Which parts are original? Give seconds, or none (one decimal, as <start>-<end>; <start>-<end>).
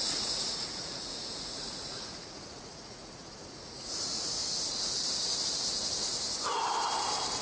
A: 4.4-7.4